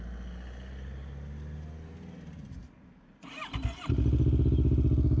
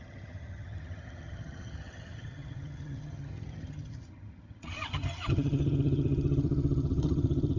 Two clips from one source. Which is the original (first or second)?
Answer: first